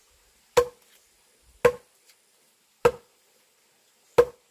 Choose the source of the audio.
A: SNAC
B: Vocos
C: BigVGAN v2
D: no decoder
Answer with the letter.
D